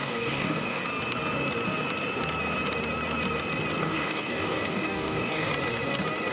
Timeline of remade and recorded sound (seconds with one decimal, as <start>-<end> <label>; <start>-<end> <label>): 0.0-0.8 remade; 0.8-3.8 recorded; 3.8-5.5 remade; 5.5-6.3 recorded